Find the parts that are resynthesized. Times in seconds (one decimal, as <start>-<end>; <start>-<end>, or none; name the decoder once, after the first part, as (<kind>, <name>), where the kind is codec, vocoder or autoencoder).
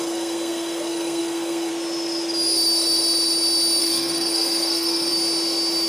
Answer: 0.0-1.7 (codec, SNAC); 3.8-5.1